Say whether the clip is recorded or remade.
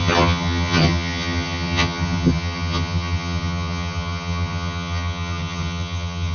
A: remade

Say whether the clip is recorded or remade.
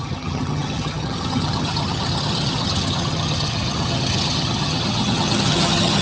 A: remade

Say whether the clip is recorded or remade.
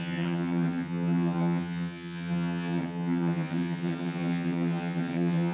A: remade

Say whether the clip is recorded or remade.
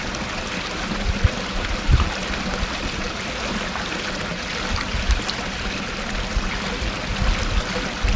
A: recorded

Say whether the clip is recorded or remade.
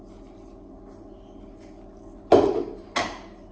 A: recorded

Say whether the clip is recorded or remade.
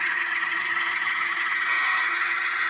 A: remade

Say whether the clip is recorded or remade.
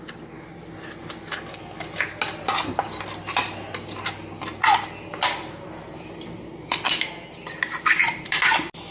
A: recorded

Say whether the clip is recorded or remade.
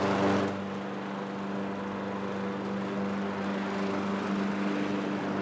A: recorded